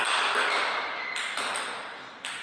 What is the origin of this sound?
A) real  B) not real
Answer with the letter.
A